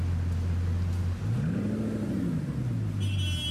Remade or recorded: recorded